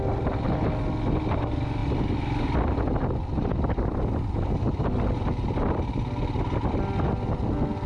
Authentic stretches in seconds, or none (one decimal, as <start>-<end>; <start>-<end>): 0.0-7.9